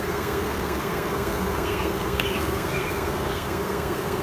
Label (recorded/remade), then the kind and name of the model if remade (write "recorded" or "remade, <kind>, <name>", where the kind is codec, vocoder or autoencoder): remade, codec, SNAC